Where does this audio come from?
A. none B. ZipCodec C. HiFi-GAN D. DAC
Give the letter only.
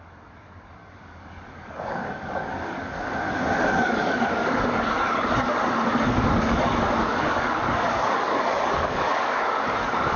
D